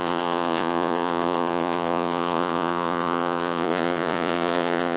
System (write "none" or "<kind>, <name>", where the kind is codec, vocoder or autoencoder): vocoder, Vocos